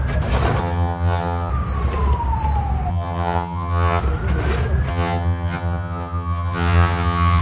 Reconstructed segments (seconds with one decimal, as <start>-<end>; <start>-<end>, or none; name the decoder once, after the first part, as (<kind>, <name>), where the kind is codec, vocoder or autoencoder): 0.6-1.5 (vocoder, HiFi-GAN); 2.9-4.0; 4.9-7.4